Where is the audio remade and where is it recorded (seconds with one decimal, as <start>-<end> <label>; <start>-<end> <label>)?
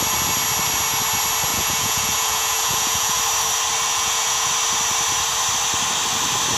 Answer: 0.0-1.5 recorded; 1.5-3.2 remade; 3.2-3.9 recorded; 3.9-4.5 remade; 4.5-6.6 recorded